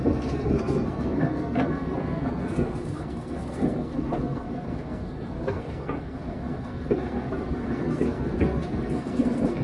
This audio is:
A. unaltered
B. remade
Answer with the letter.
B